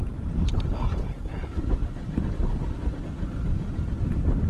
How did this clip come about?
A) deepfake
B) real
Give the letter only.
B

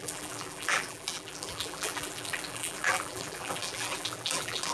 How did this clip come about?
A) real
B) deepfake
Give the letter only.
B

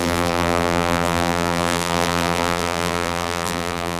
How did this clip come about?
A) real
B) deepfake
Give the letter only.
B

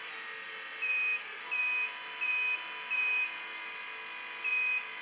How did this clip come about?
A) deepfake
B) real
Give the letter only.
B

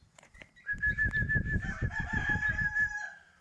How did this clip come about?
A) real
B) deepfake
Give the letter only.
B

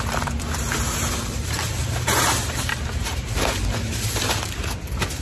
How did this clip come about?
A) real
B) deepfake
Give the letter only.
B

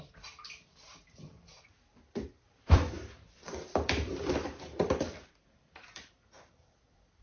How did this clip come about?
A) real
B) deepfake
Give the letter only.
B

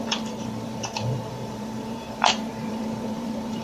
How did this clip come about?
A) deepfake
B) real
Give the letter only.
A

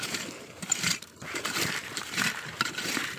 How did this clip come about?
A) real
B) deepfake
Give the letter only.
B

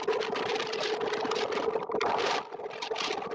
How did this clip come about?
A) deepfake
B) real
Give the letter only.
B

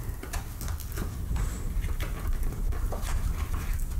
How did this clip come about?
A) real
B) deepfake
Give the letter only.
A